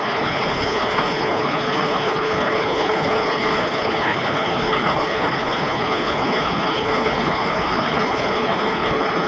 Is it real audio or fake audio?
fake